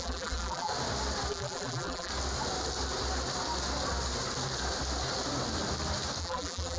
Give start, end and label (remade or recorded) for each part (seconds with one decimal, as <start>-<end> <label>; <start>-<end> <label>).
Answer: 0.0-0.7 remade; 0.7-1.3 recorded; 1.3-2.1 remade; 2.1-6.2 recorded; 6.2-6.8 remade